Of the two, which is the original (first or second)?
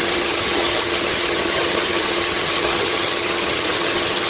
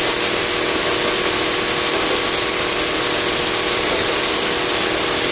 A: second